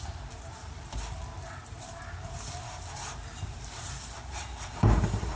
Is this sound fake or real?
fake